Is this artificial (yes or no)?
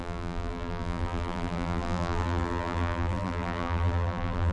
yes